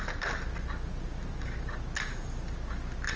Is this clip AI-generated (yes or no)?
no